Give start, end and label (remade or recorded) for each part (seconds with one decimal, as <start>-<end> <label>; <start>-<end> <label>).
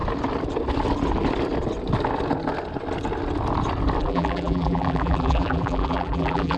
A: 0.0-4.0 recorded; 4.0-6.6 remade